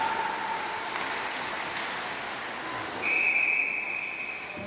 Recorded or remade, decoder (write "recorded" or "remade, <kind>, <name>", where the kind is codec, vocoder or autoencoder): recorded